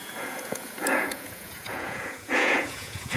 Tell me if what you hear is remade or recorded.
remade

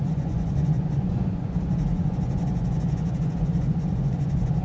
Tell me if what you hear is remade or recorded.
remade